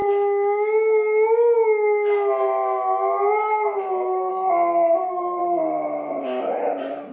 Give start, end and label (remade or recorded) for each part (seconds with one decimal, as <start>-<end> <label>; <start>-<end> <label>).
0.0-4.3 remade; 4.3-7.1 recorded